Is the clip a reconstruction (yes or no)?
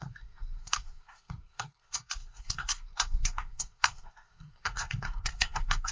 yes